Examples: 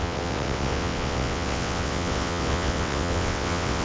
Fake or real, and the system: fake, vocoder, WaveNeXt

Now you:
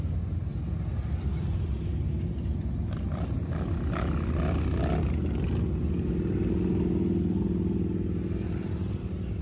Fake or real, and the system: real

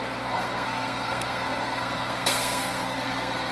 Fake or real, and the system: fake, codec, SNAC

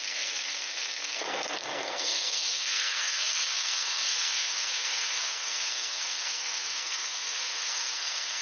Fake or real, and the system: fake, codec, SNAC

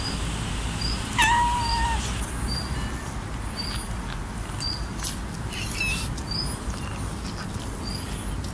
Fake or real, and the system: real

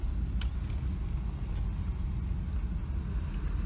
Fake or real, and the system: real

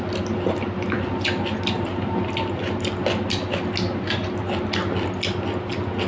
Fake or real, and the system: real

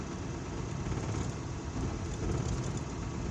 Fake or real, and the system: real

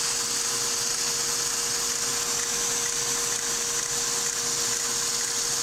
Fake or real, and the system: real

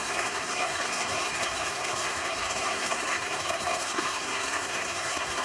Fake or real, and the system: fake, codec, SNAC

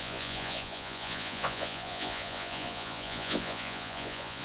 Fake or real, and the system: fake, vocoder, Vocos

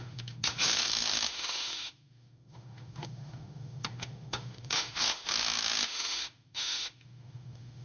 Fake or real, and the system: fake, autoencoder, DAC-VAE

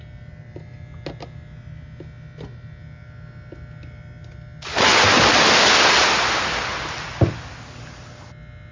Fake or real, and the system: real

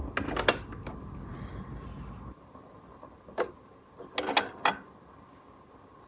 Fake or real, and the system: real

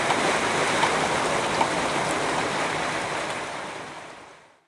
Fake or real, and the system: fake, vocoder, BigVGAN v2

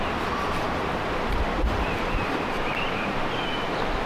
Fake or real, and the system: real